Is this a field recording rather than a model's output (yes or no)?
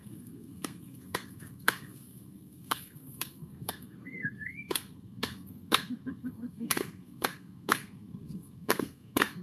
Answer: no